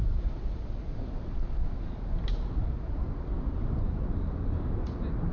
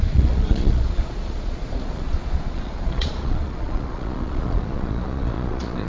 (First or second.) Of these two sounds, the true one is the first